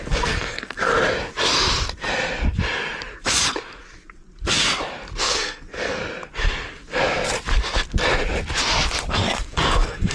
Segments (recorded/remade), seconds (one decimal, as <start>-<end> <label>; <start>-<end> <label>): 0.0-0.9 remade; 0.9-5.2 recorded; 5.2-6.0 remade; 6.0-9.1 recorded; 9.1-10.1 remade